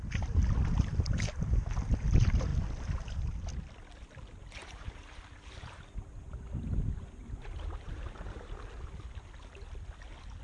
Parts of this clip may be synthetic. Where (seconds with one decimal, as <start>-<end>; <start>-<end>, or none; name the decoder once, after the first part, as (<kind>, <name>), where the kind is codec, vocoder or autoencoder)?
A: 4.6-5.5 (vocoder, BigVGAN v2); 7.2-8.5